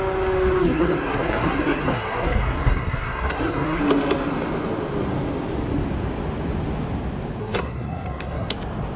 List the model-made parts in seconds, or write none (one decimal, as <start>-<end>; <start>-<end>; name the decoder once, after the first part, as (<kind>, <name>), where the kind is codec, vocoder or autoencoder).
0.6-3.8 (codec, SNAC); 7.4-8.5